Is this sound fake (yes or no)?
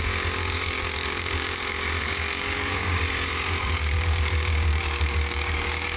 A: yes